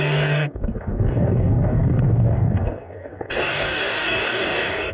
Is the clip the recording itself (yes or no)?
no